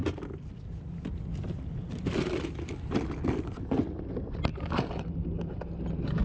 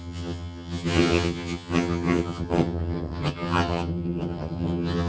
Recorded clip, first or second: first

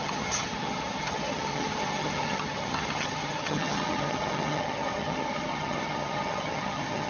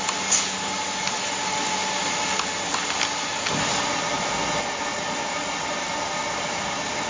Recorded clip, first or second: second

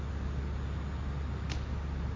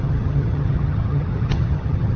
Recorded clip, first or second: first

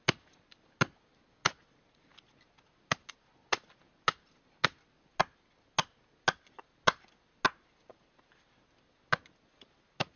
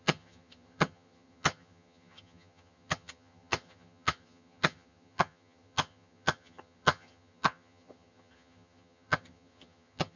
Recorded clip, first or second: first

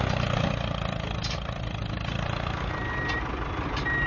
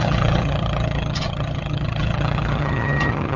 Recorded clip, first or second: first